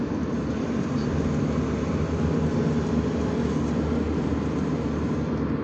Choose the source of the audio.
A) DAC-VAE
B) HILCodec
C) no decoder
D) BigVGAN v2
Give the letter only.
C